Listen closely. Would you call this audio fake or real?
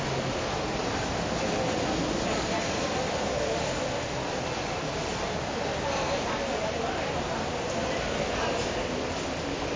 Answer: real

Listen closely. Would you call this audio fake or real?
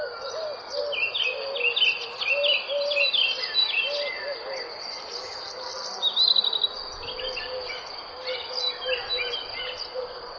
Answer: real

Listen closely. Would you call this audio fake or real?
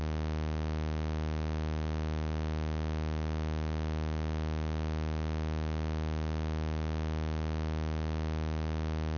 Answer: real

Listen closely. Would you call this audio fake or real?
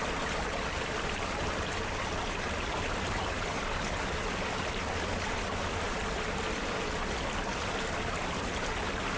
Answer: real